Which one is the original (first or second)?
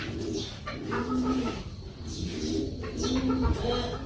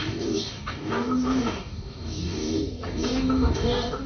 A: first